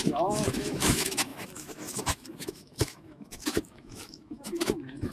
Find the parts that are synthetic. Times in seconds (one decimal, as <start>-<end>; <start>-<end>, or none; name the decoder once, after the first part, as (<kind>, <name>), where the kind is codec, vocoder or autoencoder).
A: 0.0-5.1 (autoencoder, DAC-VAE)